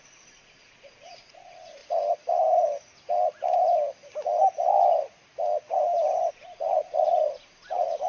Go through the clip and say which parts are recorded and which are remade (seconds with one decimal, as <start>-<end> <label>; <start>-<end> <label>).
0.0-1.8 remade; 1.8-6.3 recorded; 6.3-8.1 remade